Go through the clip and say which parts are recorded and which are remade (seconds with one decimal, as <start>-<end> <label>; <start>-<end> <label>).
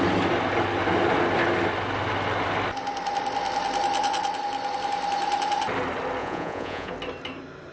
0.0-6.2 recorded; 6.2-6.9 remade; 6.9-7.7 recorded